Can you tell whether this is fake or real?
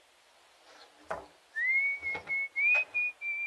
real